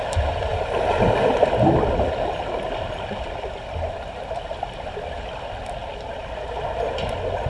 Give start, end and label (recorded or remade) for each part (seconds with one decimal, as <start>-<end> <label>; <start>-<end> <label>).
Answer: 0.0-7.5 recorded